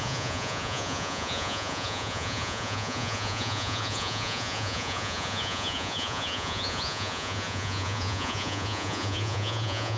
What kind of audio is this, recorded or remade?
remade